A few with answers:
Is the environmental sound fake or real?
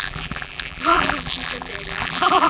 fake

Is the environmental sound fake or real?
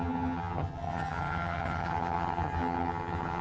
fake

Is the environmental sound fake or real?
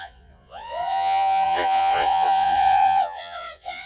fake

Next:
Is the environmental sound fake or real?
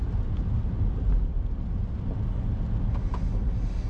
real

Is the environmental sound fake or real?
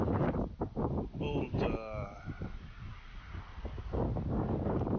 real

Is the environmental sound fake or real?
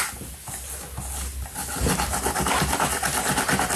real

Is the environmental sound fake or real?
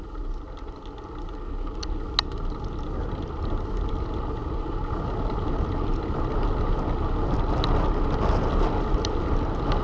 real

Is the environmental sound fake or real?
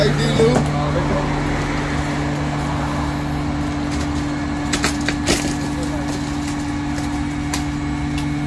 real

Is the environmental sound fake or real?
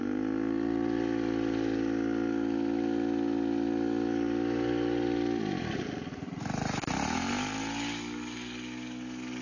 real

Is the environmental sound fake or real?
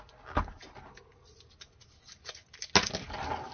real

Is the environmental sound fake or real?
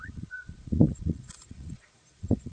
fake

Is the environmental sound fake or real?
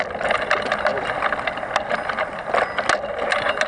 real